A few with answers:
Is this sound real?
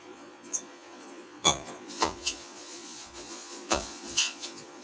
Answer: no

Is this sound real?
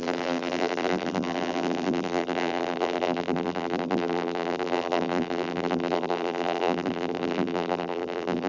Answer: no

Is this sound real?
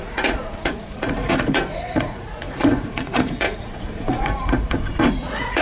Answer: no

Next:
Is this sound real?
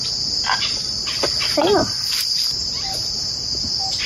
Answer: yes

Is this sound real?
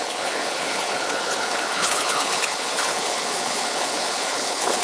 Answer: no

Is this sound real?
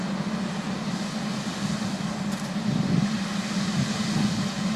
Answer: yes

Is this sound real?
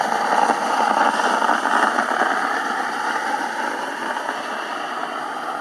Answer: yes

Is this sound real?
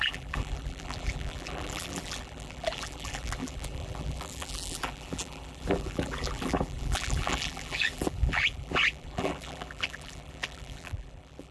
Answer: no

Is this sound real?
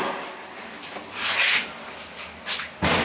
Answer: yes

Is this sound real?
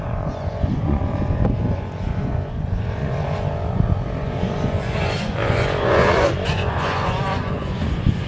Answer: no